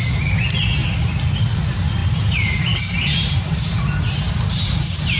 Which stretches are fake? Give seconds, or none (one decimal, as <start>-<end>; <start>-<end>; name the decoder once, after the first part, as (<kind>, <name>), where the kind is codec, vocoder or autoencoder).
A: 0.8-1.6 (vocoder, BigVGAN v2)